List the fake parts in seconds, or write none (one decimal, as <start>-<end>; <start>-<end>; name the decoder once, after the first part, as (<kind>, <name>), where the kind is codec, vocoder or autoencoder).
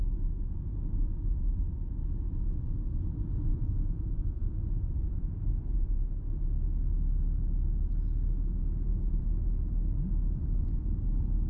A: 3.5-4.5 (vocoder, Vocos)